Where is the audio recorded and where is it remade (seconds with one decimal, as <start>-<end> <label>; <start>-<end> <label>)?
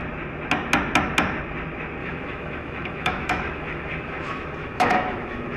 0.0-2.0 recorded; 2.0-5.6 remade